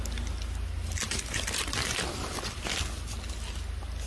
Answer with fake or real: real